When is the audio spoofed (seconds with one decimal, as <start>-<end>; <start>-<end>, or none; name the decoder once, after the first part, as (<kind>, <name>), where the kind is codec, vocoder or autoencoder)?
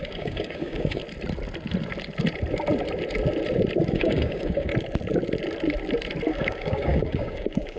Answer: 0.0-1.0 (codec, DAC); 3.9-4.7; 6.3-7.8